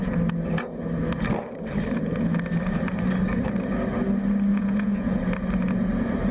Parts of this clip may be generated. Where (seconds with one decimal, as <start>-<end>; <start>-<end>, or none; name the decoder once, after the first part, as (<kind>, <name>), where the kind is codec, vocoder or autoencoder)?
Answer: 4.5-5.2 (vocoder, Vocos)